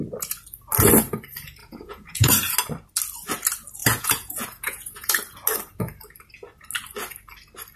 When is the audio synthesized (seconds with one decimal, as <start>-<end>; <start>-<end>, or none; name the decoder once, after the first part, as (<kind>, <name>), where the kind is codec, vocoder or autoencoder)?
1.6-2.3 (vocoder, Vocos); 3.8-5.1